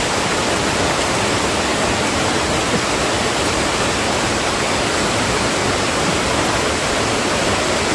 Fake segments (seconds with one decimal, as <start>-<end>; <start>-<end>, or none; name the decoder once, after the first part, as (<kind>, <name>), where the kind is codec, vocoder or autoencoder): 0.0-1.7 (vocoder, BigVGAN v2); 6.0-7.9